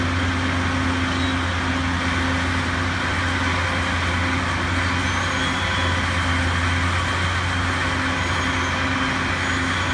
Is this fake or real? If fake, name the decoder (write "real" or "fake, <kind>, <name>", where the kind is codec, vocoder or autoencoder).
real